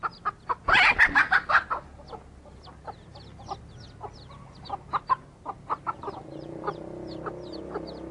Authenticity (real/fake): real